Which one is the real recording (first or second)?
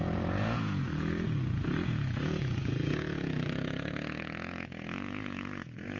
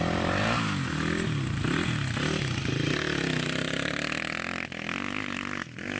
second